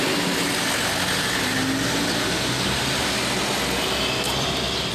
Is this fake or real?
real